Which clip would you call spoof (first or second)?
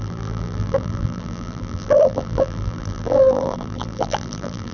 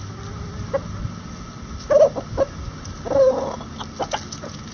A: first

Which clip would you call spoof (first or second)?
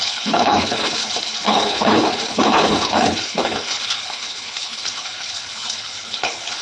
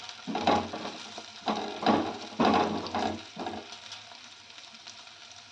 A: first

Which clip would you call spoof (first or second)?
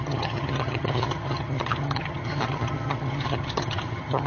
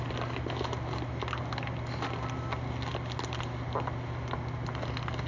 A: first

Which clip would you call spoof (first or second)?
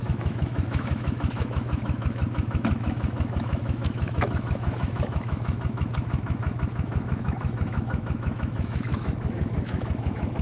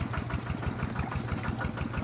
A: first